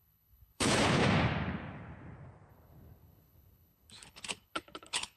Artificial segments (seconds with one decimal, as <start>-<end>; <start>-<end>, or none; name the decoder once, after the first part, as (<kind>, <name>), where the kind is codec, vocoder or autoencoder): 0.0-1.0 (codec, HILCodec); 2.5-5.2